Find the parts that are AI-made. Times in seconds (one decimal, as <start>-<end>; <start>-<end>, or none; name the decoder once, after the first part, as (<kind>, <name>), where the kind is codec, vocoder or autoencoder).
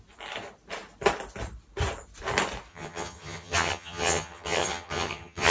2.7-5.5 (vocoder, HiFi-GAN)